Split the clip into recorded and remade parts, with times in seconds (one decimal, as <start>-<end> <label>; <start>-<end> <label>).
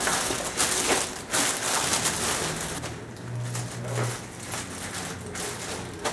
0.0-6.1 recorded